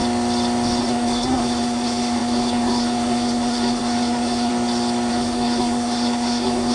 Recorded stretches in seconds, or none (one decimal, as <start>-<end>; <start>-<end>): 0.0-0.8; 4.5-5.1